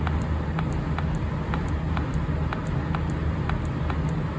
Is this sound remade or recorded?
recorded